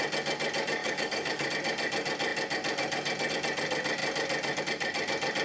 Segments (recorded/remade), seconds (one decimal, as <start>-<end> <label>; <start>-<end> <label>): 0.0-0.8 recorded; 0.8-1.5 remade; 1.5-5.4 recorded